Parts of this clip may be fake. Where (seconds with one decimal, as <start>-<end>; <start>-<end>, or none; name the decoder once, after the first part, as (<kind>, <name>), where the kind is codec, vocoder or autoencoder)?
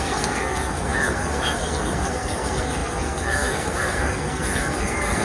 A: 0.0-5.2 (codec, SNAC)